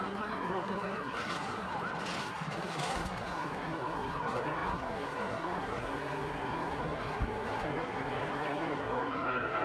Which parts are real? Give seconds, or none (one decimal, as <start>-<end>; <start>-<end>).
1.7-2.2